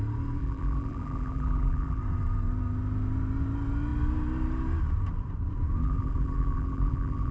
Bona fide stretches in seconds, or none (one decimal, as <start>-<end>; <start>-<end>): 0.0-0.4; 2.0-5.8